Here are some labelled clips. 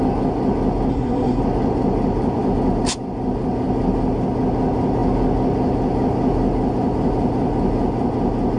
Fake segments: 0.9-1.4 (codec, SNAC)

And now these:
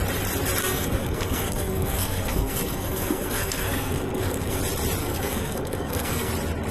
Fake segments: 0.6-4.6 (codec, SNAC); 5.0-6.3

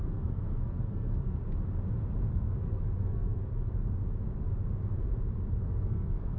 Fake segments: 0.0-1.4 (codec, SNAC); 2.3-3.5; 5.5-6.4

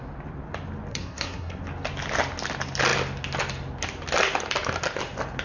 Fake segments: 0.9-1.6 (codec, SNAC)

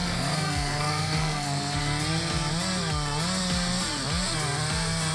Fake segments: 0.0-1.8 (codec, SNAC)

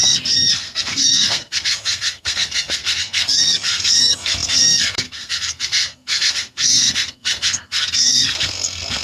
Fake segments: 0.0-9.0 (codec, SNAC)